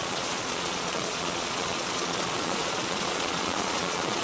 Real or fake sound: fake